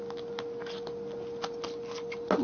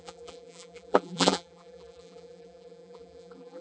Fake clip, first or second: second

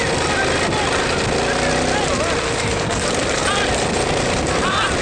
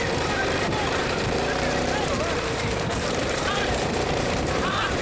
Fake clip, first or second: second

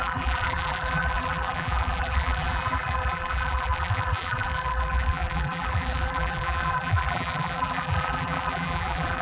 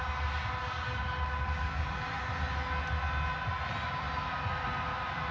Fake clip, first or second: first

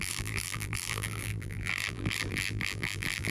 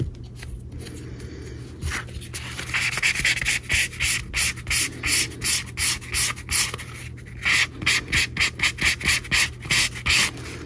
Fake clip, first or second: first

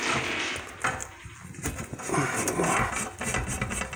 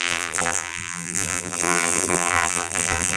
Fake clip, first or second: second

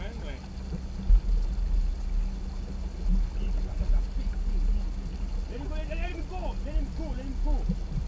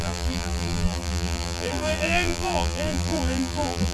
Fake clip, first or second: second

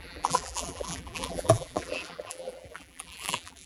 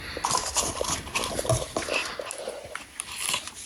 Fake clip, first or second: first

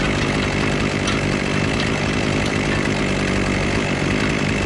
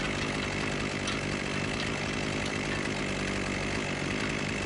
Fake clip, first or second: first